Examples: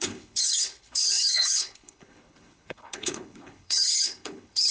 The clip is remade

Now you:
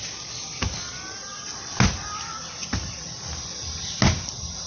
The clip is recorded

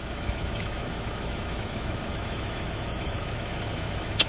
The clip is remade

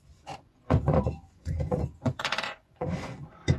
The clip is remade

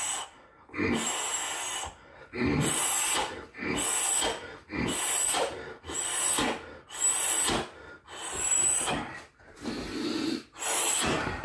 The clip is recorded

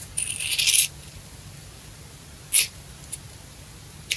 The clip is recorded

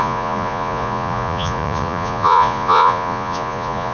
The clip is remade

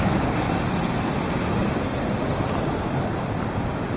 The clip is recorded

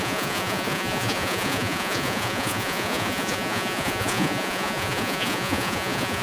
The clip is remade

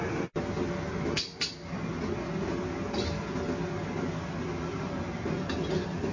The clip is recorded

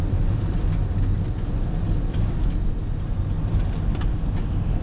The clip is recorded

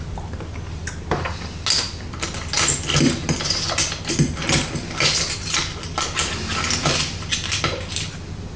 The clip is recorded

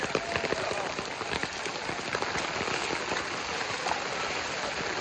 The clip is recorded